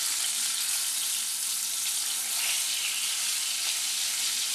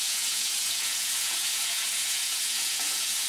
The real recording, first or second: first